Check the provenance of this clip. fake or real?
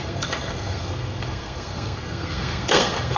fake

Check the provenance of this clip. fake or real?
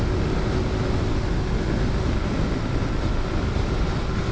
real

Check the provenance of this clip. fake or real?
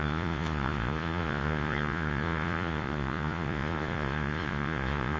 fake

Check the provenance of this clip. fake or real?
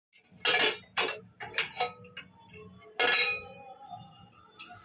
real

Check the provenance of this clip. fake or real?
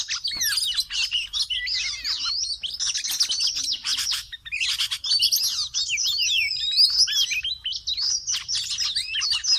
real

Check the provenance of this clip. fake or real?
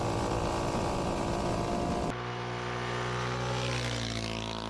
real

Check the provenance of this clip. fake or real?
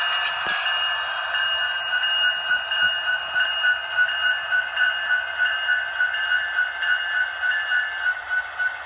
real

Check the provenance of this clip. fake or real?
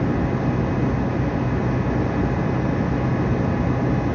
real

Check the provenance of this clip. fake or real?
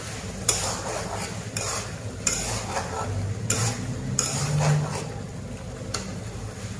real